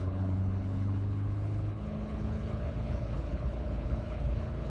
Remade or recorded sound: remade